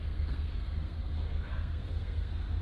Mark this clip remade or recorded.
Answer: remade